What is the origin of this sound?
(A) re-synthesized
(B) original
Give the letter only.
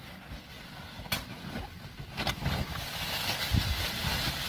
B